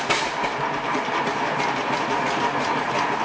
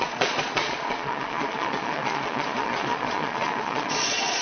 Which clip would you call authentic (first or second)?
first